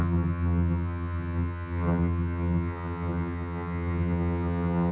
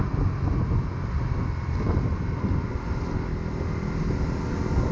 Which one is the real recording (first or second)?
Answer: second